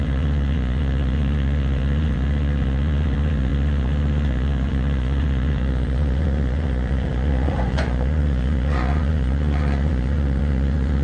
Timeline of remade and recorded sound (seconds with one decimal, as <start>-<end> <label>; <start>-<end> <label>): 0.0-11.0 remade